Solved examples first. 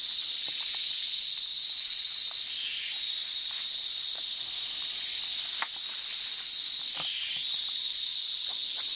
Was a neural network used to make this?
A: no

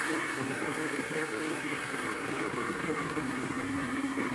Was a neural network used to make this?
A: yes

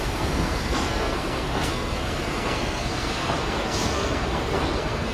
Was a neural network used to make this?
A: yes